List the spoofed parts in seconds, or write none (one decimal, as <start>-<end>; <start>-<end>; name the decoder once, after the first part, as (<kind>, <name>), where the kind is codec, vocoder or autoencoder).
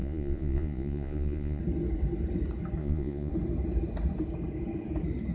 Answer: 0.0-1.6 (vocoder, Vocos); 2.8-3.3